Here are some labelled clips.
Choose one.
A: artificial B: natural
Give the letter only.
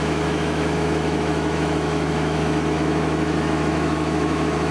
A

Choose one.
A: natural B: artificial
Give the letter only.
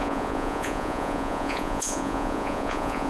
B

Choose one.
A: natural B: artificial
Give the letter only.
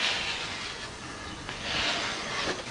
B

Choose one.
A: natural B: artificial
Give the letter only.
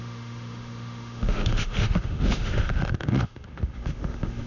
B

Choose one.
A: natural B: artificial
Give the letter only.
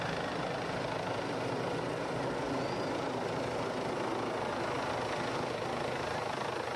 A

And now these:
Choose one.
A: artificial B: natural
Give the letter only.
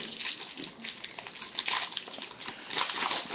B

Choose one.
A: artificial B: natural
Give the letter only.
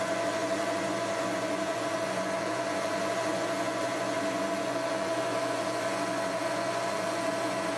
A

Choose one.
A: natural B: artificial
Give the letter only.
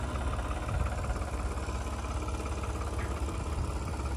A